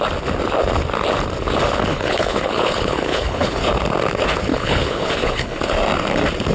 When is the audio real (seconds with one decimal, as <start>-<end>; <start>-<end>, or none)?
0.0-1.9; 3.6-4.5; 5.6-6.5